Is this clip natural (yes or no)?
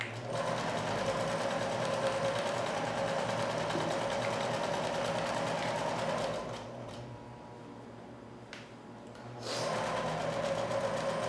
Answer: yes